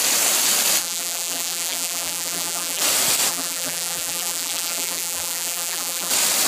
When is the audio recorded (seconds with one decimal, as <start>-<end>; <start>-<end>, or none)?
0.0-0.8; 2.8-3.3; 6.1-6.5